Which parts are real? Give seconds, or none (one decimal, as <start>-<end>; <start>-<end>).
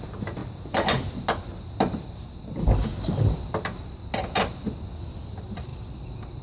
0.0-6.4